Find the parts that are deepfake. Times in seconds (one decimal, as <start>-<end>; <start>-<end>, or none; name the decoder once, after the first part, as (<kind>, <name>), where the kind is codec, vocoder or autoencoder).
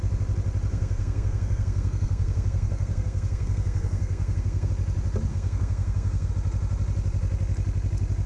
0.7-4.7 (codec, SNAC); 5.3-6.3